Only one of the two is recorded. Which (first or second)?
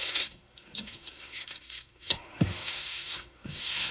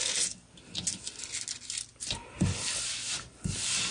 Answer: second